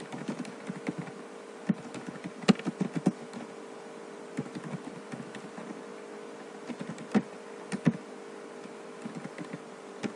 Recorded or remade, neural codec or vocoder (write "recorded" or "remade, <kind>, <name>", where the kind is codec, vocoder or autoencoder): recorded